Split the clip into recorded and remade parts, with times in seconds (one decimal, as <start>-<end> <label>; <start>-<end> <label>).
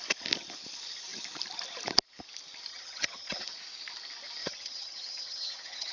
0.0-2.7 recorded; 2.7-3.4 remade; 3.4-4.4 recorded; 4.4-5.9 remade